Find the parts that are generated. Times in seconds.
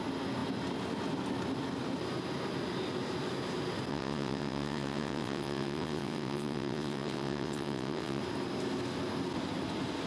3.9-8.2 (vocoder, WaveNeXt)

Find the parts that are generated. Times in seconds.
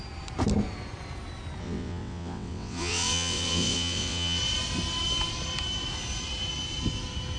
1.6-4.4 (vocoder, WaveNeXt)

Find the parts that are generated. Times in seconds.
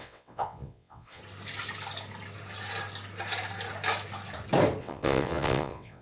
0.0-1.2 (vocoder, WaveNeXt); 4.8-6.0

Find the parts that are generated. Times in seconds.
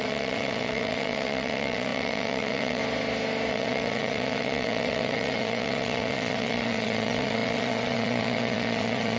0.0-2.8 (vocoder, WaveNeXt); 3.5-9.2